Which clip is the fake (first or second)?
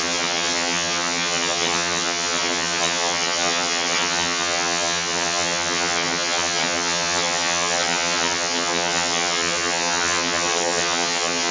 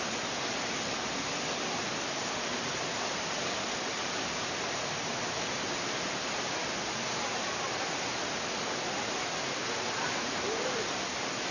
first